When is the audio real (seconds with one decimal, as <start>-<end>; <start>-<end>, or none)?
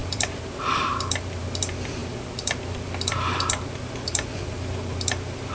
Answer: 1.4-2.0